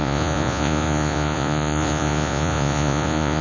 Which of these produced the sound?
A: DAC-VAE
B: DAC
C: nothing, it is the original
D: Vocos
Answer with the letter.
D